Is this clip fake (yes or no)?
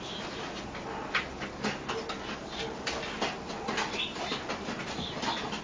no